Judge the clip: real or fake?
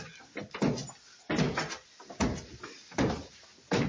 real